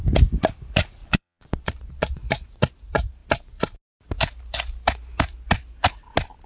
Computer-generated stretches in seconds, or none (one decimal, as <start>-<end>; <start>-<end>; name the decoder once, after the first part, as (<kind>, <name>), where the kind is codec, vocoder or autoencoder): 1.0-2.3 (vocoder, Vocos)